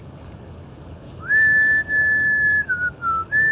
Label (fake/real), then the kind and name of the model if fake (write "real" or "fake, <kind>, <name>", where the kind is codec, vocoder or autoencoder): fake, codec, DAC